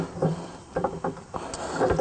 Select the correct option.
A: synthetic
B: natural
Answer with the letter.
B